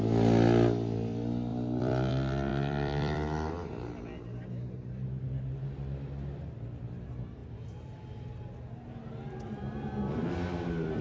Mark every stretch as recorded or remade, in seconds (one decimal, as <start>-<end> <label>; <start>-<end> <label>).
0.0-1.5 recorded; 1.5-2.1 remade; 2.1-2.5 recorded; 2.5-3.5 remade; 3.5-11.0 recorded